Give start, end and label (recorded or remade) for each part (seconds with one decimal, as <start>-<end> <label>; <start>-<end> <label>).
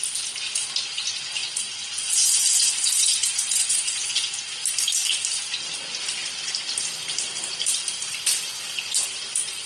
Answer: 0.0-1.4 recorded; 1.4-4.3 remade; 4.3-9.7 recorded